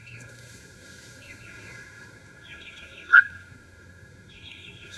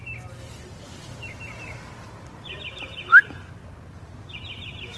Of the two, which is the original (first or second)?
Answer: second